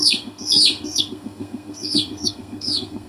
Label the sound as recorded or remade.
remade